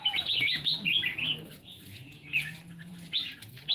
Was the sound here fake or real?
fake